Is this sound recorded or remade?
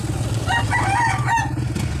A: recorded